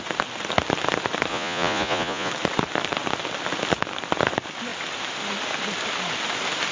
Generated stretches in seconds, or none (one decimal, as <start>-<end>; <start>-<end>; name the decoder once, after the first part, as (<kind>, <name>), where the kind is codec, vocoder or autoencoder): 1.3-2.3 (vocoder, Vocos)